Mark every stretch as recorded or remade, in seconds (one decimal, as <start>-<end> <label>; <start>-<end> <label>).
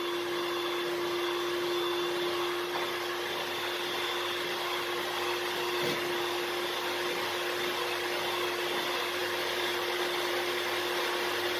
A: 0.0-11.6 recorded